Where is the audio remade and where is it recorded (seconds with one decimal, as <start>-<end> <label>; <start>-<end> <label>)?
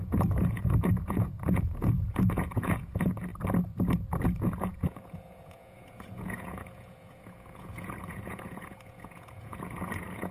0.0-3.3 remade; 3.3-4.4 recorded; 4.4-10.3 remade